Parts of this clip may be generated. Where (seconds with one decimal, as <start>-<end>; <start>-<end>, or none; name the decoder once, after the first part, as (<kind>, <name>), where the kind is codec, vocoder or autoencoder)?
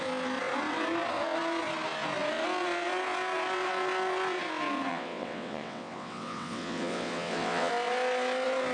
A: 4.9-7.7 (vocoder, WaveNeXt)